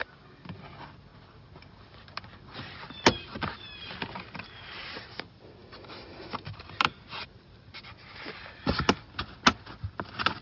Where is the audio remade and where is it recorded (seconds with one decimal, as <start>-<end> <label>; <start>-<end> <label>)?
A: 0.0-10.4 recorded